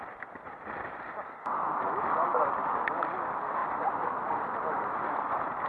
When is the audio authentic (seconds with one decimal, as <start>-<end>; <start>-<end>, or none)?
0.0-5.7